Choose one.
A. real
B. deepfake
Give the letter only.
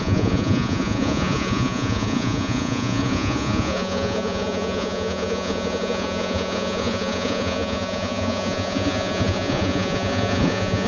B